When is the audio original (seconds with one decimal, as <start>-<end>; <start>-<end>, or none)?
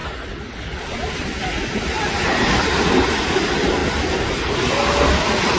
0.0-5.6